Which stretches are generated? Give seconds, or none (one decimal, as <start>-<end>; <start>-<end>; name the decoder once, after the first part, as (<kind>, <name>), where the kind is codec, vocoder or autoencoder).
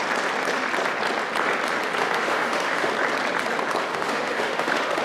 2.0-2.9 (autoencoder, DAC-VAE); 3.9-5.0